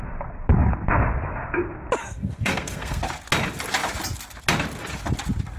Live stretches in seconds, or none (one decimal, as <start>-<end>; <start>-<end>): 0.0-2.0; 3.0-5.6